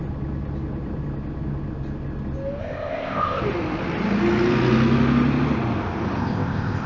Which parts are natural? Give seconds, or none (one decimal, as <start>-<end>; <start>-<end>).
0.0-2.6; 3.4-6.2